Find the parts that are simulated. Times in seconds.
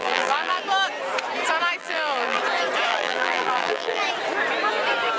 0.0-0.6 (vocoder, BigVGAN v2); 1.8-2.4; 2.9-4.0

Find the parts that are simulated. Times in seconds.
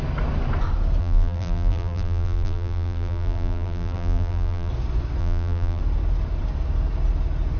1.0-4.7 (vocoder, BigVGAN v2); 5.2-5.8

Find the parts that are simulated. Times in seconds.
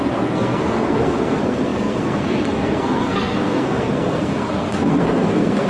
0.0-5.7 (codec, SNAC)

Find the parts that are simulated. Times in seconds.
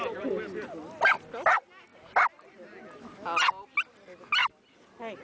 none